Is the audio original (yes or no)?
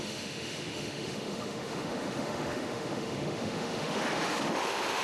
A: no